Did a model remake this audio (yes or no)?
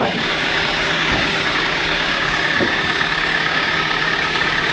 yes